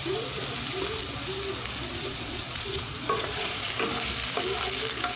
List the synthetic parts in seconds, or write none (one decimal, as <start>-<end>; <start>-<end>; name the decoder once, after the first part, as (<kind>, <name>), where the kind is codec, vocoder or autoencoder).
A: 1.9-3.7 (vocoder, Vocos)